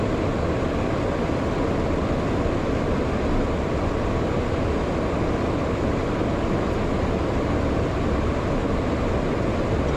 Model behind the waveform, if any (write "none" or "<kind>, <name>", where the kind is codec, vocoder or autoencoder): none